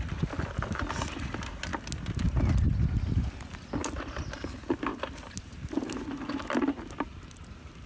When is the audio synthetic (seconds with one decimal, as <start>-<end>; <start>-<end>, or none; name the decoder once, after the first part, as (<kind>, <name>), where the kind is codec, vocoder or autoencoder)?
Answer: none